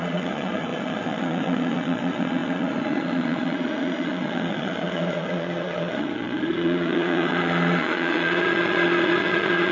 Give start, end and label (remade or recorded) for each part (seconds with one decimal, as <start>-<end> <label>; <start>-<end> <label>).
0.0-9.7 remade